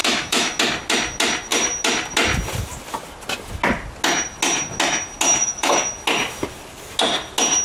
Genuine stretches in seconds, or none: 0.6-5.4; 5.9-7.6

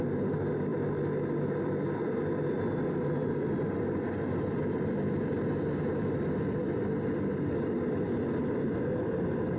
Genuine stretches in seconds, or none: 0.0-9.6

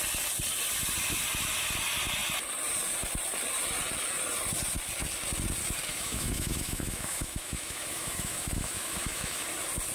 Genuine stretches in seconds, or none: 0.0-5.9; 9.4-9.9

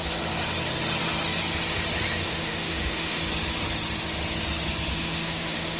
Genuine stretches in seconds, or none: 0.0-2.2; 3.3-4.9

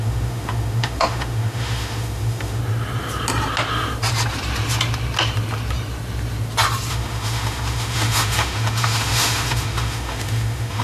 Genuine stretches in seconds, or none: 2.6-6.9